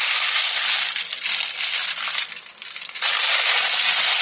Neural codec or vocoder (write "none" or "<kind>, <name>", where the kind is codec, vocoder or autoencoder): none